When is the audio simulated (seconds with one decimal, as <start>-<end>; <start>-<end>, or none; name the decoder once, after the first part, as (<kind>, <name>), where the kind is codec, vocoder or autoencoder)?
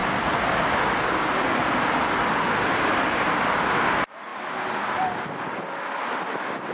none